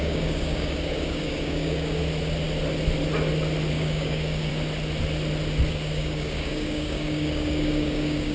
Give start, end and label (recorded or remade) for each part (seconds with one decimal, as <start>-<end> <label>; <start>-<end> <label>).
0.0-2.0 remade; 2.0-3.7 recorded; 3.7-4.5 remade; 4.5-5.7 recorded; 5.7-8.3 remade